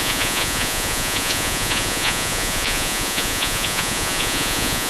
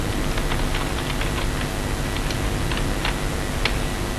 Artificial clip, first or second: first